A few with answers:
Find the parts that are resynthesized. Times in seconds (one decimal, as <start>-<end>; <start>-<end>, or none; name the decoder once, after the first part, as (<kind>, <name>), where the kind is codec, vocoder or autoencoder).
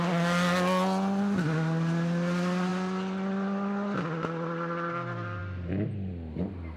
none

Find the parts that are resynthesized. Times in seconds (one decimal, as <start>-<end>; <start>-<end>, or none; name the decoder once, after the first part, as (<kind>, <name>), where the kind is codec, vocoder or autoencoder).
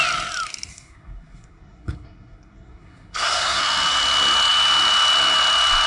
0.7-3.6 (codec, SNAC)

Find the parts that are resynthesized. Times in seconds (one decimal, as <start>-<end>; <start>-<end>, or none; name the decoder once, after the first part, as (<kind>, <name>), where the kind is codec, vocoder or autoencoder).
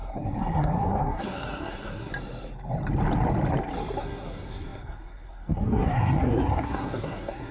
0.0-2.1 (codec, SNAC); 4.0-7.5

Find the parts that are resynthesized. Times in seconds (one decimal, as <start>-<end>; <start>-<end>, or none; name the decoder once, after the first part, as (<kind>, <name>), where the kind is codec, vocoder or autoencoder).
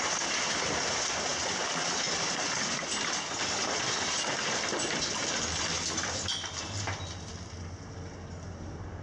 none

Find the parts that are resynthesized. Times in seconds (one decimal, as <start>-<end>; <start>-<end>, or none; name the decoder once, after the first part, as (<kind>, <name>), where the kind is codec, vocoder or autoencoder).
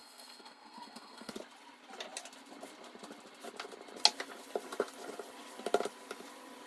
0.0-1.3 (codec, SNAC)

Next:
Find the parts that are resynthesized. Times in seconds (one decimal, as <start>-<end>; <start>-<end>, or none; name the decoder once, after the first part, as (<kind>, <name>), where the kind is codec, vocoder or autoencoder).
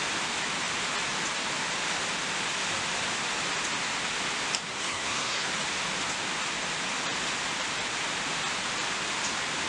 4.7-5.5 (codec, SNAC)